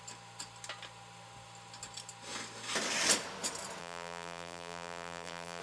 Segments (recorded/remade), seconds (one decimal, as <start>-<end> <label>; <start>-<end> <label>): 0.0-3.8 recorded; 3.8-5.6 remade